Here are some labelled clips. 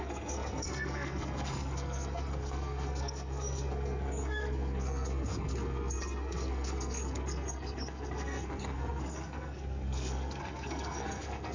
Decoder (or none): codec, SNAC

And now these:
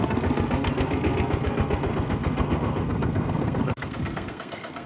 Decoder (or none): codec, SNAC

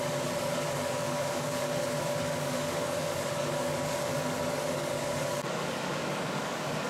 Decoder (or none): codec, DAC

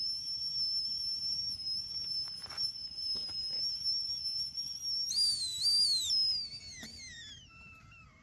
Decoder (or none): none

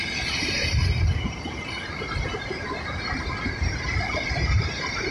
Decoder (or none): vocoder, BigVGAN v2